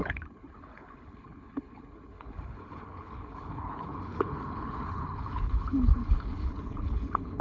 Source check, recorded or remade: remade